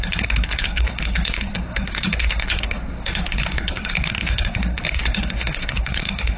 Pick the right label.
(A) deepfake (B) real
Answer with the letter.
A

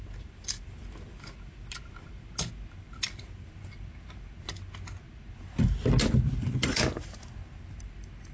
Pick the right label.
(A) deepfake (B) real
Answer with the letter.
B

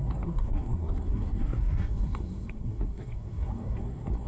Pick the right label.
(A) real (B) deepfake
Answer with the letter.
B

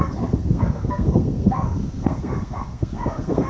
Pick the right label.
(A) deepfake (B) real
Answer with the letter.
A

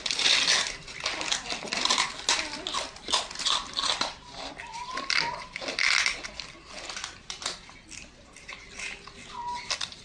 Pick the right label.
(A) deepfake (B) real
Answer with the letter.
B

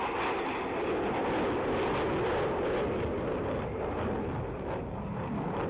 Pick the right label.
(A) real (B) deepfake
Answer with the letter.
A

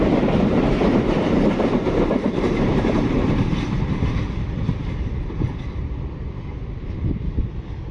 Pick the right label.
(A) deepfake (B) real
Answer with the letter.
B